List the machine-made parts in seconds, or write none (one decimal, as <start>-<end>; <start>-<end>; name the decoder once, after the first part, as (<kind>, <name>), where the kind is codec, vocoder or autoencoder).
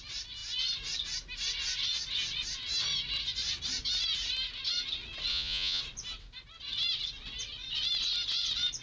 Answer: 5.3-5.8 (vocoder, Vocos)